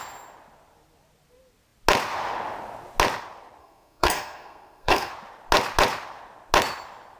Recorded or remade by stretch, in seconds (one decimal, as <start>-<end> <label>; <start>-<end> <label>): 0.0-3.6 recorded; 3.6-5.1 remade; 5.1-7.2 recorded